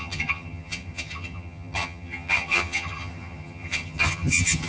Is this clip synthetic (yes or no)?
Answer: yes